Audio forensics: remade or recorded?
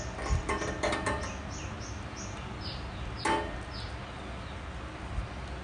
recorded